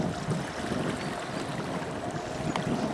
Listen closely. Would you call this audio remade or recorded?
recorded